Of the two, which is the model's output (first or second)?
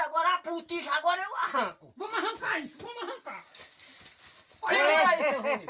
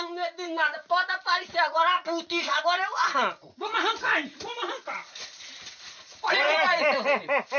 second